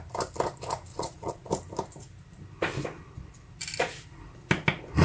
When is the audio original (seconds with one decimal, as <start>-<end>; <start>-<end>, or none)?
0.0-0.9; 1.5-5.0

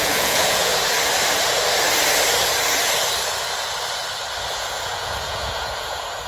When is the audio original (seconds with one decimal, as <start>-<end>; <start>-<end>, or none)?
0.7-4.5

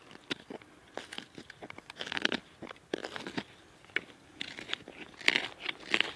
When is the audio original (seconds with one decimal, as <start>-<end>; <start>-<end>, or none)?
0.0-6.2

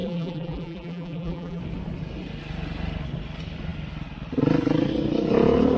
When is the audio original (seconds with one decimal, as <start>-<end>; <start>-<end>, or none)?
1.6-5.8

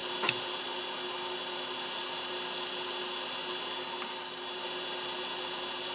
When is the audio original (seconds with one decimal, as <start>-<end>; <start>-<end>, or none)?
0.0-5.9

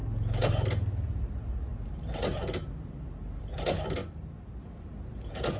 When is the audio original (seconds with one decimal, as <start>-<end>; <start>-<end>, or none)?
0.0-5.6